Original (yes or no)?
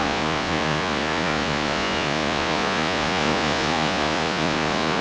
no